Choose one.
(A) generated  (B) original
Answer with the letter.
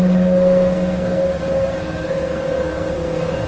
A